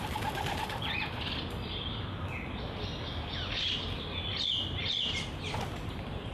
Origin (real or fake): real